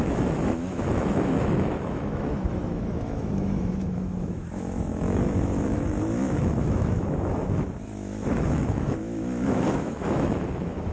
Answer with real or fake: fake